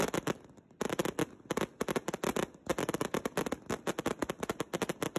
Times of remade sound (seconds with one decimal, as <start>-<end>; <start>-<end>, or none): none